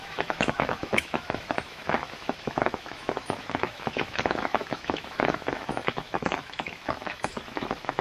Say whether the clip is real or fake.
fake